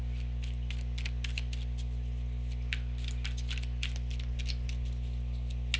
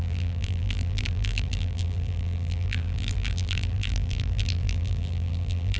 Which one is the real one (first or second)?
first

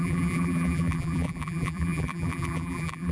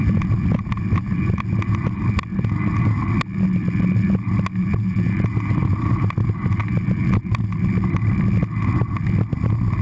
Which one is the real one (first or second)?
second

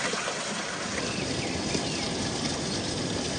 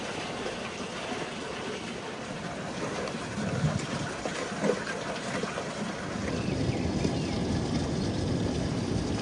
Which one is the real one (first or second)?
second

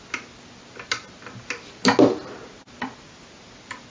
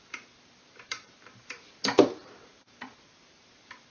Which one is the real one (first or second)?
first